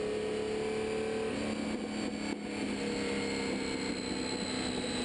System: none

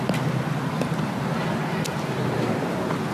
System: none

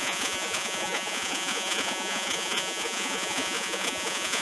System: vocoder, Vocos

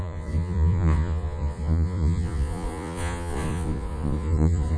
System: vocoder, Vocos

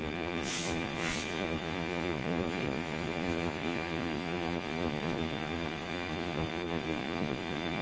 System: vocoder, Vocos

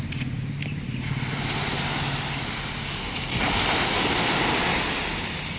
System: none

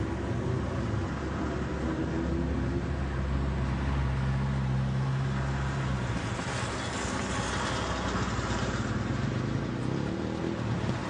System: none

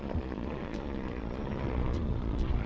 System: vocoder, Vocos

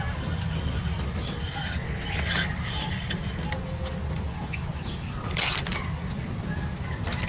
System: none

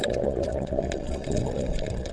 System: vocoder, Vocos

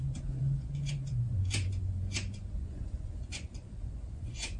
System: vocoder, Vocos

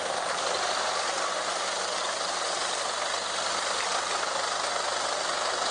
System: none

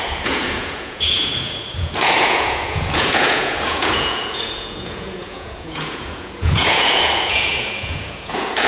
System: vocoder, Vocos